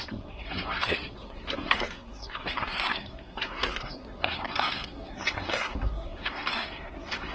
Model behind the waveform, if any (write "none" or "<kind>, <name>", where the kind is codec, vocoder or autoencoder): codec, SNAC